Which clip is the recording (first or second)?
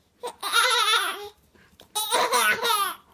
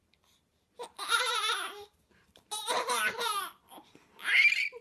first